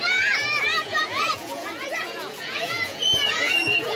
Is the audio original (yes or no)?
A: no